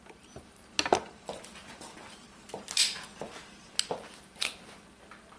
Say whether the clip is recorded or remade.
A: recorded